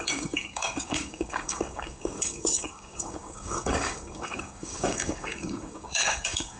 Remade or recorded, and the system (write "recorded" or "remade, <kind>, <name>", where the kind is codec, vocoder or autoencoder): remade, codec, DAC